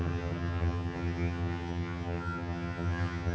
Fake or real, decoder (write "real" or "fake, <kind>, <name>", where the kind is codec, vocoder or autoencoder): fake, vocoder, HiFi-GAN